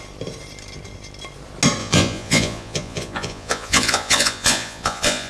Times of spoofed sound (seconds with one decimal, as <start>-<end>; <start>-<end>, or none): 1.8-5.3